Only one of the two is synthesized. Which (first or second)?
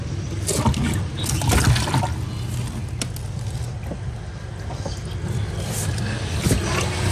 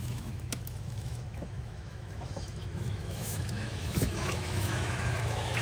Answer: second